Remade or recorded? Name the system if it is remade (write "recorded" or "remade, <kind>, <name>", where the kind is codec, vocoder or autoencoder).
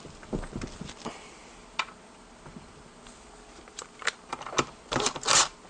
recorded